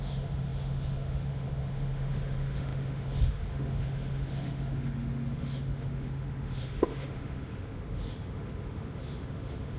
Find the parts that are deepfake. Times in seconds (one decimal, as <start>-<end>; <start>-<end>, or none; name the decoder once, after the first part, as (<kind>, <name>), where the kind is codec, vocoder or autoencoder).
0.0-9.8 (autoencoder, DAC-VAE)